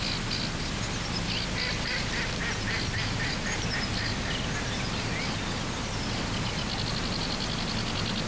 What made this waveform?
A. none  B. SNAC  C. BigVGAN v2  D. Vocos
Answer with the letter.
A